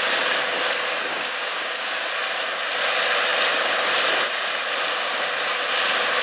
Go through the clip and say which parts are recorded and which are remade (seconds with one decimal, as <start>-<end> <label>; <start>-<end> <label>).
0.0-1.1 recorded; 1.1-2.1 remade; 2.1-6.2 recorded